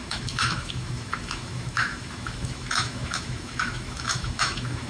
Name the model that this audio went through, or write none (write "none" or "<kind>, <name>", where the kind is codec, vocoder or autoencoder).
autoencoder, DAC-VAE